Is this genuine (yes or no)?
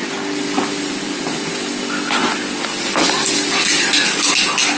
yes